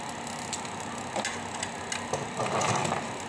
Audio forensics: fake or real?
real